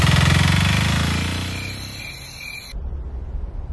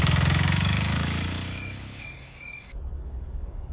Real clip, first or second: first